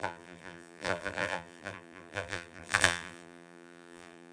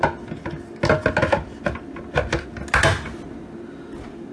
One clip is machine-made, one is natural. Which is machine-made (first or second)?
first